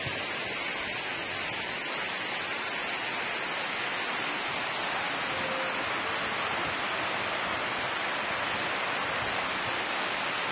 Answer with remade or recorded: recorded